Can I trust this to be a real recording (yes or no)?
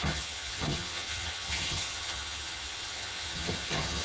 no